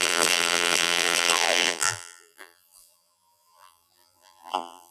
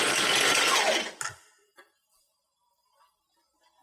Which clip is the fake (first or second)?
first